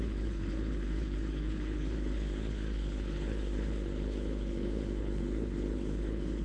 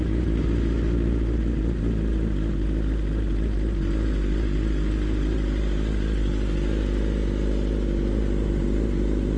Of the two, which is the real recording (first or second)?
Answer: second